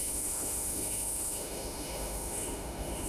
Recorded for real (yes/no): no